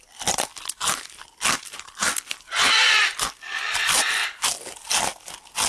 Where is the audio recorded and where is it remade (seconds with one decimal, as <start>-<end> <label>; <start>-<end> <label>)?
0.0-2.0 recorded; 2.0-4.7 remade; 4.7-5.7 recorded